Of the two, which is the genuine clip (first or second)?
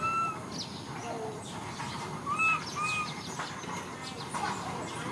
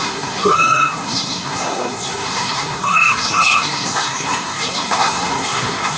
first